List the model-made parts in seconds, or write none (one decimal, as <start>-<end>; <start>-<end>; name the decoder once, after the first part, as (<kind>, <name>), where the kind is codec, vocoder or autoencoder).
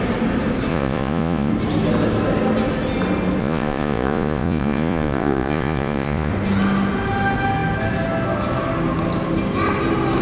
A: 0.7-1.5 (vocoder, Vocos); 3.4-6.3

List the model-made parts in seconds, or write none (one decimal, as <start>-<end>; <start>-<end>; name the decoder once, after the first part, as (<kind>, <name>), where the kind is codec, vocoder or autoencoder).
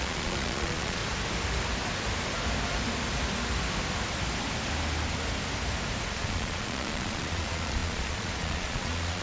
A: 0.0-1.0 (vocoder, Vocos); 6.1-9.2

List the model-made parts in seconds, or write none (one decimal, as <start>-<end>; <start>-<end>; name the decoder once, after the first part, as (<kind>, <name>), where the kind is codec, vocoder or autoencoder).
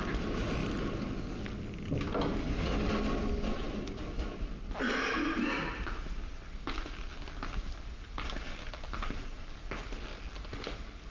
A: none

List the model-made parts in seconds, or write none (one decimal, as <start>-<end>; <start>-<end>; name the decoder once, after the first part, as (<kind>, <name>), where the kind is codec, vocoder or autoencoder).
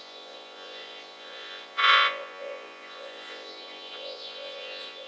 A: 0.0-5.1 (vocoder, Vocos)